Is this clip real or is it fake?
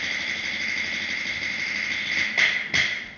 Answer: real